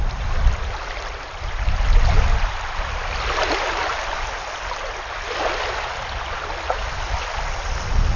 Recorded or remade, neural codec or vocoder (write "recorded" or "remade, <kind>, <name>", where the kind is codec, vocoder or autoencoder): recorded